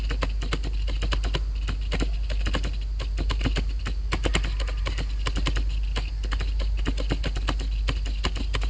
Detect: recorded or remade recorded